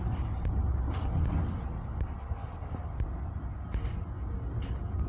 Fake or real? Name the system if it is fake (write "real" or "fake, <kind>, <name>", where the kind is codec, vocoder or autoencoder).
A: real